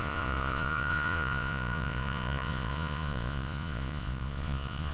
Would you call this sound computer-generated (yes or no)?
yes